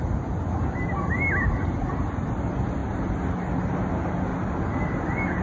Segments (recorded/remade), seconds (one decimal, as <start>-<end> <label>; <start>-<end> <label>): 0.0-5.4 recorded